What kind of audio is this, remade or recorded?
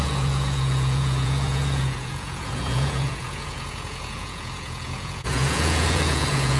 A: remade